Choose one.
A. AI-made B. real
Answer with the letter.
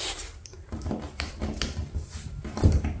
A